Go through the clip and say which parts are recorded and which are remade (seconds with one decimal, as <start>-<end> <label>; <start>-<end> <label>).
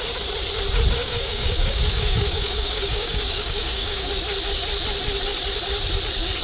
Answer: 0.0-1.0 recorded; 1.0-4.1 remade; 4.1-6.4 recorded